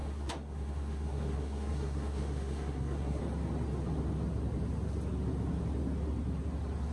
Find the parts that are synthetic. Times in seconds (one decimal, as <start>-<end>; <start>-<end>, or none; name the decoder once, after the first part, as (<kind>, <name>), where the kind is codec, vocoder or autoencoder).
0.0-3.2 (codec, SNAC)